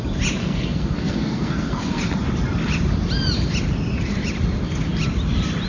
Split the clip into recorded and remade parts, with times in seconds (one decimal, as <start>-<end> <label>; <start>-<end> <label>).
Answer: 0.0-0.4 recorded; 0.4-2.0 remade; 2.0-5.7 recorded